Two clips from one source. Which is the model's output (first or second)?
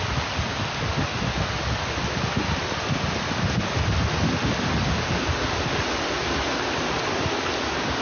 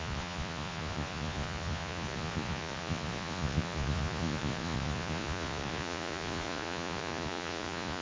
second